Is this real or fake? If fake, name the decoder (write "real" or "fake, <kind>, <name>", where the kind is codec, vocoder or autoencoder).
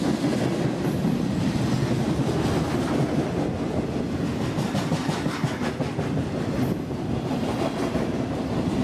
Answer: real